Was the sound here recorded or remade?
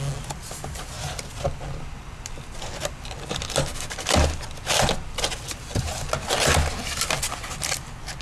recorded